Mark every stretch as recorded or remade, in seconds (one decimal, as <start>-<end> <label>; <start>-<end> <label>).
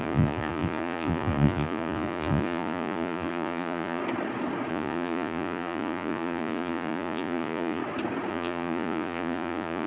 0.0-4.0 remade; 4.0-4.7 recorded; 4.7-7.8 remade; 7.8-8.3 recorded; 8.3-9.9 remade